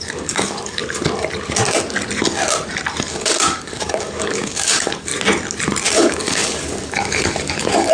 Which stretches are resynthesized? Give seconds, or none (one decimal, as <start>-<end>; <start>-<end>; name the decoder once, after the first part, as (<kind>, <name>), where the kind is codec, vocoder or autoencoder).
0.0-0.8 (codec, DAC); 3.1-5.1; 5.9-7.9